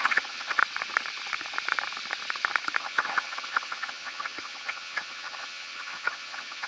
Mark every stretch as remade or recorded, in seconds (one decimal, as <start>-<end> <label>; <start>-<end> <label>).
0.0-0.6 remade; 0.6-2.8 recorded; 2.8-6.7 remade